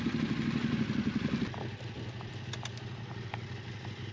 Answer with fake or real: real